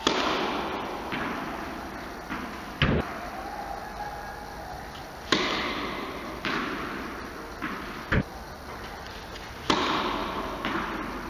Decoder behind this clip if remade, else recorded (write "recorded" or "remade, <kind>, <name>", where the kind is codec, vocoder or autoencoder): recorded